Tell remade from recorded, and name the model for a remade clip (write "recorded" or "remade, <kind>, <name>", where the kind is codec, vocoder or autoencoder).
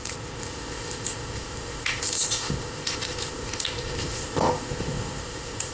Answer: remade, codec, ZipCodec